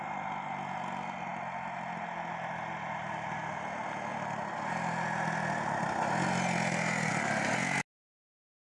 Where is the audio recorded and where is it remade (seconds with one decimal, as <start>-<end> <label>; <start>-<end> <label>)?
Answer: 0.0-8.7 recorded